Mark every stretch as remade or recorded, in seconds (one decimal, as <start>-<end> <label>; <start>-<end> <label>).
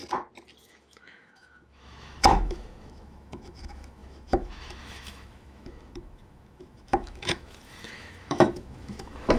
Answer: 0.0-0.6 recorded; 0.6-9.4 remade